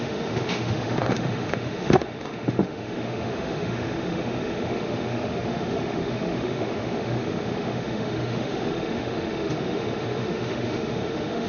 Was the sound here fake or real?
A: fake